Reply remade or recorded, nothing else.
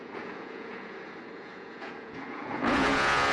remade